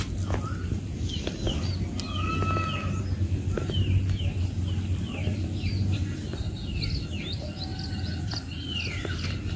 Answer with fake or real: real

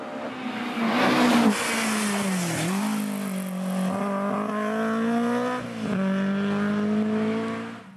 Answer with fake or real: real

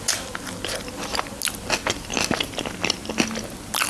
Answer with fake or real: real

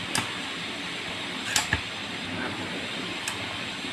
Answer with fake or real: fake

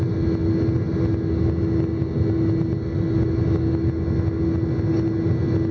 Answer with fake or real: real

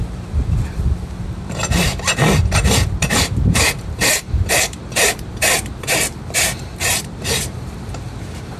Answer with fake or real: fake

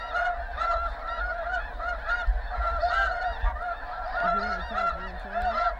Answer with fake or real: real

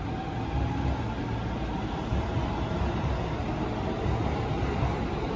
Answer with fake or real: real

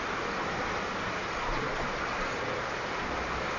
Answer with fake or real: real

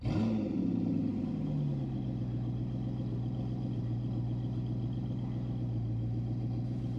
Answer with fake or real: real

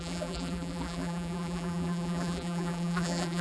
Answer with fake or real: fake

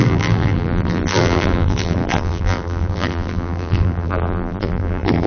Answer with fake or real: fake